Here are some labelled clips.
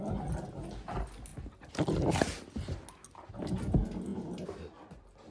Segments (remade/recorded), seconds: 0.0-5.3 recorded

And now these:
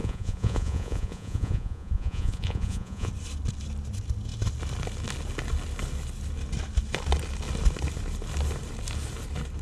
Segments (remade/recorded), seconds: 0.0-3.1 remade; 3.1-9.6 recorded

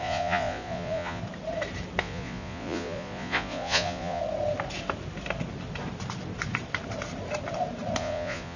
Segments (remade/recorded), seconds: 0.0-1.2 remade; 1.2-2.0 recorded; 2.0-4.2 remade; 4.2-8.0 recorded; 8.0-8.6 remade